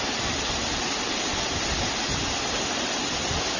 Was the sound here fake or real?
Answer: real